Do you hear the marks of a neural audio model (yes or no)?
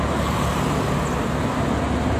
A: no